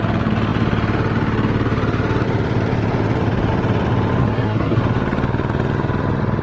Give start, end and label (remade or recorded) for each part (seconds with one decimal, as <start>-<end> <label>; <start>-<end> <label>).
0.0-4.2 recorded; 4.2-4.8 remade; 4.8-6.4 recorded